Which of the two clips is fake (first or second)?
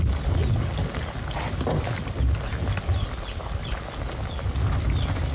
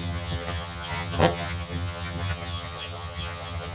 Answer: second